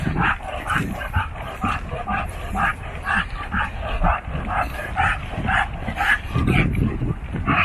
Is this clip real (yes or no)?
yes